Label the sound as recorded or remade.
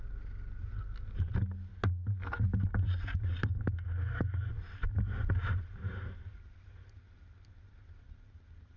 recorded